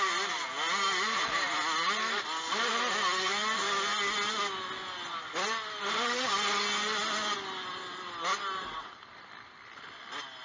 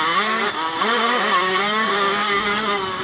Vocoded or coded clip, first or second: second